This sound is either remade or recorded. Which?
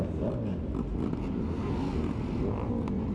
recorded